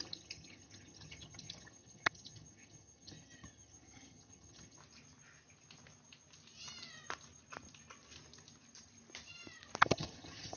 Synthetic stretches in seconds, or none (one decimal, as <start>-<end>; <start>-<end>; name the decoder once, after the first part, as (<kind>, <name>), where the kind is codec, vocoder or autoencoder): 0.0-4.8 (vocoder, HiFi-GAN); 9.8-10.6